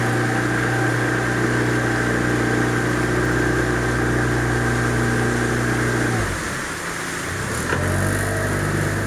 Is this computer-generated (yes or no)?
no